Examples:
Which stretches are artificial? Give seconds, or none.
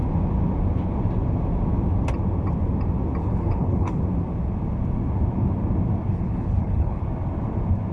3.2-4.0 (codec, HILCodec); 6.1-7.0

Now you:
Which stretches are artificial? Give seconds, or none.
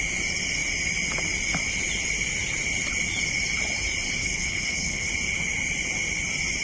4.2-5.1 (codec, HILCodec)